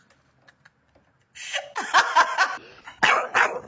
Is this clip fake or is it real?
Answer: real